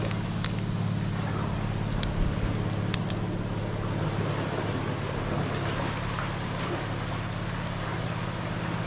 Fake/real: real